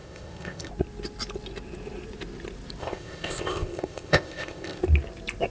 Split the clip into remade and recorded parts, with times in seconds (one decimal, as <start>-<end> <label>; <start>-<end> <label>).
0.0-0.7 remade; 0.7-2.8 recorded; 2.8-4.8 remade; 4.8-5.5 recorded